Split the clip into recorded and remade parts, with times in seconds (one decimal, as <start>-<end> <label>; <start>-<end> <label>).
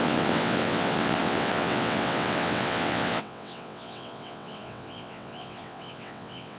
0.0-6.6 remade